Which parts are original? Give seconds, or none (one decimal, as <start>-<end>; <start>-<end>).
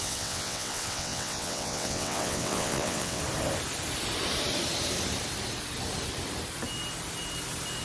3.2-7.8